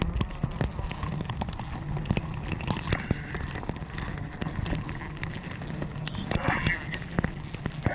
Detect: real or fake real